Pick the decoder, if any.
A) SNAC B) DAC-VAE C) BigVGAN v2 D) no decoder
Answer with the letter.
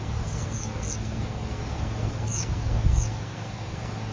A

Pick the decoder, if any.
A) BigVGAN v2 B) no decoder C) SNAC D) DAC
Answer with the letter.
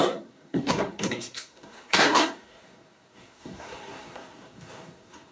C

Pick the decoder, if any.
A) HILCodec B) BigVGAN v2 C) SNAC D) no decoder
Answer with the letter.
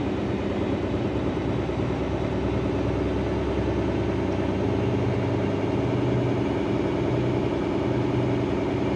D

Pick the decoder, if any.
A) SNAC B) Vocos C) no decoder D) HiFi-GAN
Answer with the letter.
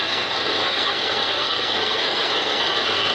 A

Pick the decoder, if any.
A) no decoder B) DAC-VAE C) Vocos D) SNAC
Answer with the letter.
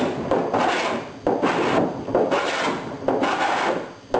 A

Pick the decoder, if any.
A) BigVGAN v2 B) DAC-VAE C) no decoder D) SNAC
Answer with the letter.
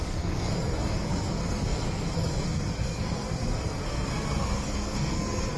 D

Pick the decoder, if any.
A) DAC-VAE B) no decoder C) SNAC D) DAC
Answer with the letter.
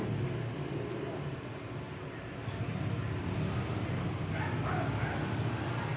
B